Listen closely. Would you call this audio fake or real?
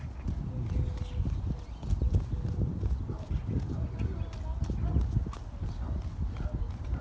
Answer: real